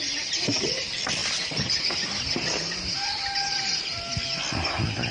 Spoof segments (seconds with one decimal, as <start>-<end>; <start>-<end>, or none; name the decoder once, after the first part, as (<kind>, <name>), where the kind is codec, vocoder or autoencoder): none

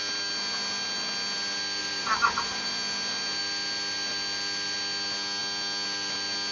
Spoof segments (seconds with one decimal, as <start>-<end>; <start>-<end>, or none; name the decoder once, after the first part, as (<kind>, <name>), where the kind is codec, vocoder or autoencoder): 1.8-2.7 (vocoder, BigVGAN v2)

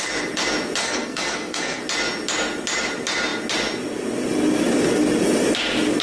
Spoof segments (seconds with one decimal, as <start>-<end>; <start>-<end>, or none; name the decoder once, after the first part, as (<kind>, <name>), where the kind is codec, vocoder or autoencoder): 0.8-1.8 (codec, SNAC)